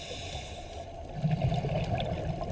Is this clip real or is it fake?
real